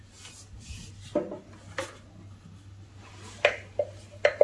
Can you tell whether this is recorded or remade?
recorded